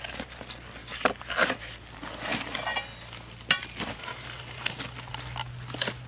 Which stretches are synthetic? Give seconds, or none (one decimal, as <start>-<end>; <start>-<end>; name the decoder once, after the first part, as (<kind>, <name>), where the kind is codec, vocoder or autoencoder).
none

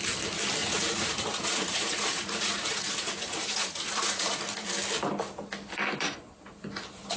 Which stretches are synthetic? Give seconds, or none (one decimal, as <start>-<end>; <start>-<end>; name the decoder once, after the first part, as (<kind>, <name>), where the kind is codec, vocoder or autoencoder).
0.6-4.7 (vocoder, Vocos)

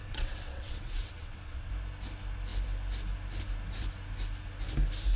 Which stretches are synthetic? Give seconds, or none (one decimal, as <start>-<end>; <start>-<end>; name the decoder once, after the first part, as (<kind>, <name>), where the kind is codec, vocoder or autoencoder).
0.0-1.7 (vocoder, WaveNeXt)

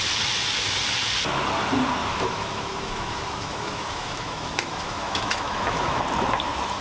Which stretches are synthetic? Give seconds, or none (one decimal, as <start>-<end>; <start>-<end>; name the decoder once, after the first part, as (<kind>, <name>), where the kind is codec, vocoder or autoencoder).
2.0-6.0 (autoencoder, DAC-VAE)

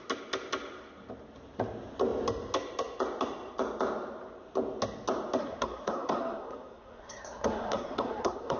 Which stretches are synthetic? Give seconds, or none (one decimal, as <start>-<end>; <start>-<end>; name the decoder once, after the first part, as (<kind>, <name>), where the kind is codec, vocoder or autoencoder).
5.4-8.6 (codec, SNAC)

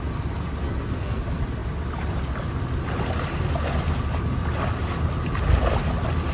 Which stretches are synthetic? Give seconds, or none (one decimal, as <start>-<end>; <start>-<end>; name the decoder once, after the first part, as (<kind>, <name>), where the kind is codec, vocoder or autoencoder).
0.6-1.2 (codec, SNAC)